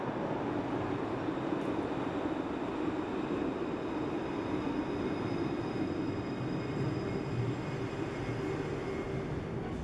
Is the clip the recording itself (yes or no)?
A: yes